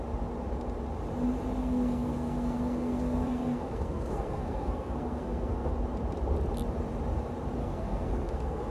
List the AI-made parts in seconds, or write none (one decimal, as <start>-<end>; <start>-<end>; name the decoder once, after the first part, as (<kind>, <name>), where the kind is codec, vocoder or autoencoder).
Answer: 1.6-5.7 (codec, SNAC); 7.6-8.7